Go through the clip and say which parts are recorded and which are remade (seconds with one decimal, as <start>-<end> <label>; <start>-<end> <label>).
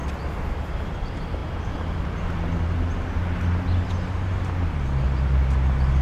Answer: 0.0-6.0 recorded